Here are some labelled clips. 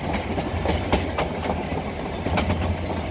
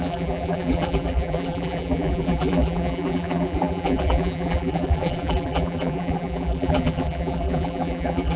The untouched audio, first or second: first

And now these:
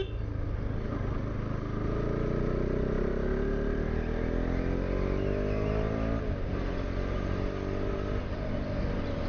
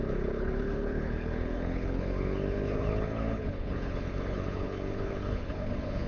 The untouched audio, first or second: first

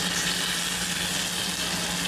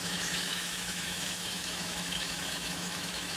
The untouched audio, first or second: first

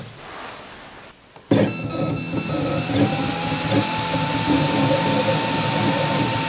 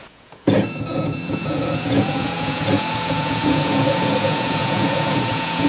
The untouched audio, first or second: first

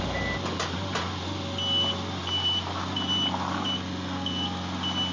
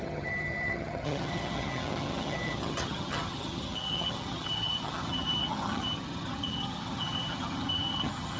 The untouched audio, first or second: first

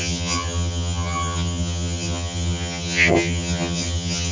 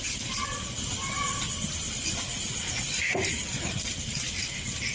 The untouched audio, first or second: second